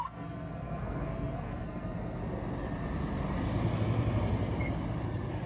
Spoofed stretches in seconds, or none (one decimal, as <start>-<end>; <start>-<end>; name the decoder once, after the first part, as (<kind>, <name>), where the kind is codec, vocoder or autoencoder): 0.0-2.2 (codec, SNAC)